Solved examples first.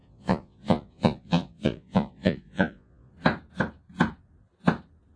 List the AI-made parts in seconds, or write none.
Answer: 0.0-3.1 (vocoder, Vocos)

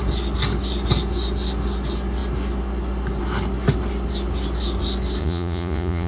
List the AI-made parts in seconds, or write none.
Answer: 5.2-6.1 (vocoder, Vocos)

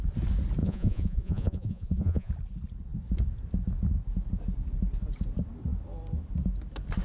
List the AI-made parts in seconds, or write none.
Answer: 0.6-2.3 (vocoder, Vocos)

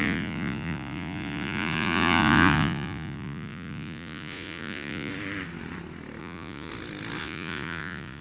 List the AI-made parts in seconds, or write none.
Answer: 0.0-5.1 (vocoder, Vocos); 6.2-6.7; 7.2-8.2

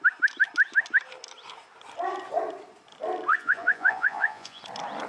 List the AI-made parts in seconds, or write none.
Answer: 3.3-4.6 (vocoder, Vocos)

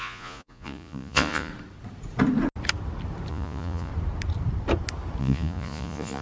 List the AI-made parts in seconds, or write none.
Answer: 0.0-1.5 (vocoder, Vocos); 3.3-3.9; 5.2-6.2